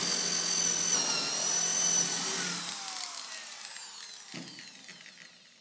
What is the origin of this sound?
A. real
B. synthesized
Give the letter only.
A